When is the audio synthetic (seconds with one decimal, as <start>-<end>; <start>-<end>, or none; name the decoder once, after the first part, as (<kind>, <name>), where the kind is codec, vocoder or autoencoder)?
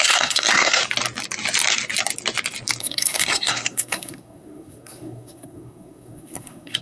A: 0.0-0.8 (codec, SNAC); 2.8-6.8